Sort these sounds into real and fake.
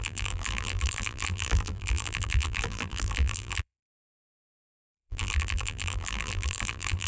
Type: fake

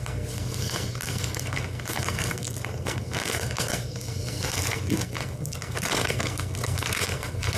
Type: fake